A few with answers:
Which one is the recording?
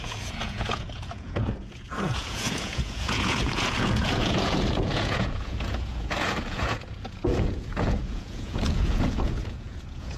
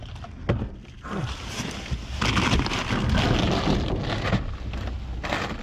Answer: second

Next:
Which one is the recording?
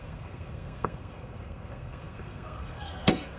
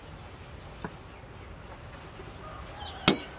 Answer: second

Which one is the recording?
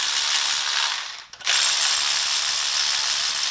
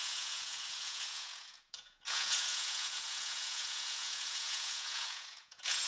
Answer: first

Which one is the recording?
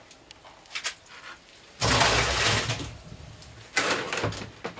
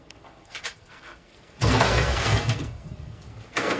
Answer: first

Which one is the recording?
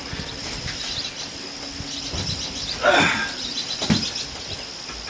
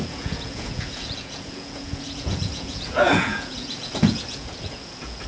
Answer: first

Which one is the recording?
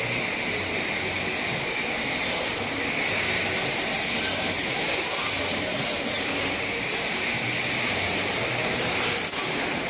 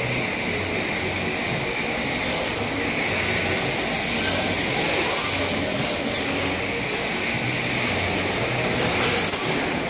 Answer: second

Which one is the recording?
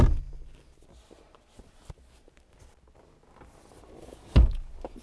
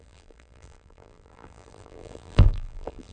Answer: first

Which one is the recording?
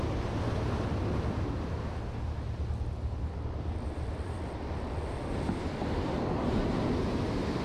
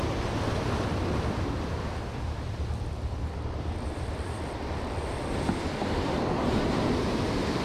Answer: first